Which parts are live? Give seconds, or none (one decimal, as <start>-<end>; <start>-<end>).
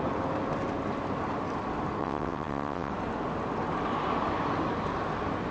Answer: 0.0-2.0; 2.9-5.5